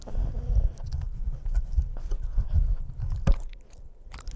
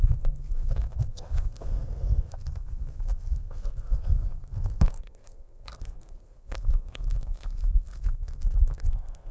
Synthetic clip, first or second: second